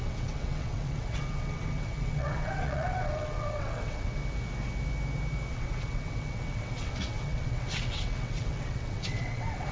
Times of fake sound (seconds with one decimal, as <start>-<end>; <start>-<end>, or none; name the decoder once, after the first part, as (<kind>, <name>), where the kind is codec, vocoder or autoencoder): 0.0-4.2 (vocoder, WaveNeXt); 5.5-9.7